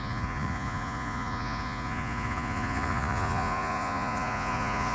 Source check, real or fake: fake